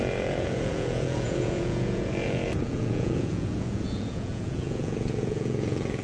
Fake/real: fake